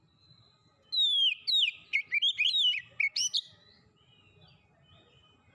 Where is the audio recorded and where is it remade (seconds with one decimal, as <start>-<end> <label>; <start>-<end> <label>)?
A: 0.0-5.5 recorded